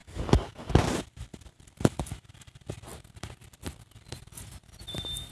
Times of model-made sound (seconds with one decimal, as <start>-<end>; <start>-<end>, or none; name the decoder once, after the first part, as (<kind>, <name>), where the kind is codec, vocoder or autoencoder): 0.0-0.7 (codec, DAC)